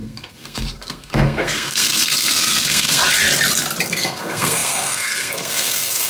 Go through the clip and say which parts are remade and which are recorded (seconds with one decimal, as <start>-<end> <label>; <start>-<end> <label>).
0.0-3.0 remade; 3.0-3.9 recorded; 3.9-6.1 remade